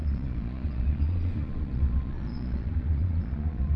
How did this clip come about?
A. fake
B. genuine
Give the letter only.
A